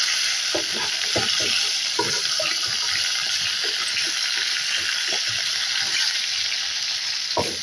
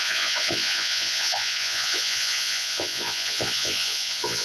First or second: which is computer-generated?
second